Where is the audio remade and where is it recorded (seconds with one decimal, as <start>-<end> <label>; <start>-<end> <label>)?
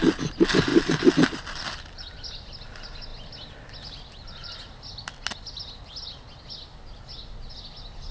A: 0.0-8.1 recorded